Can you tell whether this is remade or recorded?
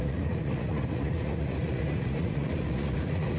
remade